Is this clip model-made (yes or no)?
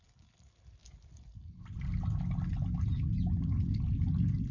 no